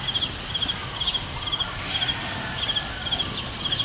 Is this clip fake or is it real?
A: real